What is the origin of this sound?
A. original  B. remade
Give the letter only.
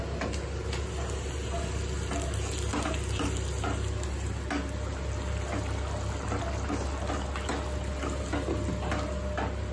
A